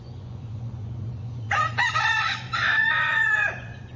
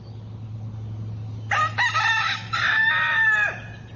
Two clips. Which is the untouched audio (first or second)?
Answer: second